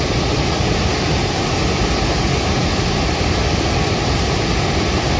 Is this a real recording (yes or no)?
yes